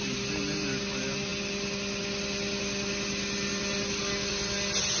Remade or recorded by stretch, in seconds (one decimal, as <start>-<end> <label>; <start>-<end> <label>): 0.0-5.0 recorded